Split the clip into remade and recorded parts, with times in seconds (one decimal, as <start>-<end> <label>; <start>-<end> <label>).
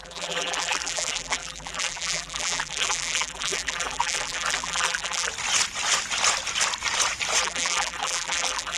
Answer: 0.0-5.3 remade; 5.3-7.4 recorded; 7.4-8.8 remade